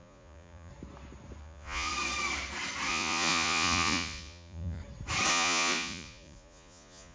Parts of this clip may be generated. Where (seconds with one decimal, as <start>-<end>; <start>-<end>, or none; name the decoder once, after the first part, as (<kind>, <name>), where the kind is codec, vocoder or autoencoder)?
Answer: 0.0-0.7 (vocoder, Vocos); 1.4-1.9; 2.9-4.8; 5.3-7.1